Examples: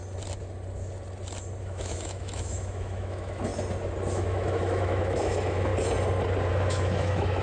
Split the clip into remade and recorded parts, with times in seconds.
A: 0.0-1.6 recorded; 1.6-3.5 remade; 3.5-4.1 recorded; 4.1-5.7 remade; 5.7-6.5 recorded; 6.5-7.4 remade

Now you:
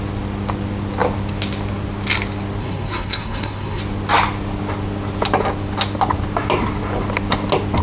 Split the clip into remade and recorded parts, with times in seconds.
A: 0.0-2.6 recorded; 2.6-3.8 remade; 3.8-7.8 recorded

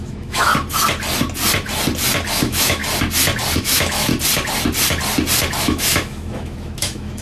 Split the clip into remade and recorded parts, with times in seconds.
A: 0.0-0.5 remade; 0.5-2.3 recorded; 2.3-2.8 remade; 2.8-3.6 recorded; 3.6-4.1 remade; 4.1-5.6 recorded; 5.6-7.2 remade

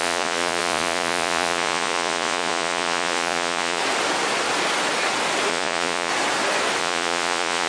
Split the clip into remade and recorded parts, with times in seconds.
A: 0.0-3.8 remade; 3.8-5.5 recorded; 5.5-6.1 remade; 6.1-6.8 recorded; 6.8-7.7 remade

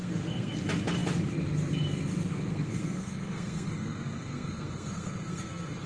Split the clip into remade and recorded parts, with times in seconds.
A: 0.0-0.5 remade; 0.5-2.3 recorded; 2.3-5.9 remade

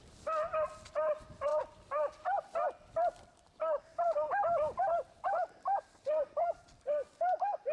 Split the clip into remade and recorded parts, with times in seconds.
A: 0.0-7.7 recorded

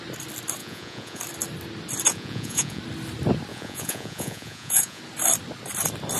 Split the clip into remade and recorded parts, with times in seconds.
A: 0.0-0.6 recorded; 0.6-1.2 remade; 1.2-2.1 recorded; 2.1-2.8 remade; 2.8-3.5 recorded; 3.5-5.0 remade; 5.0-6.2 recorded